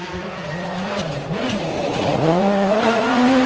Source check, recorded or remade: remade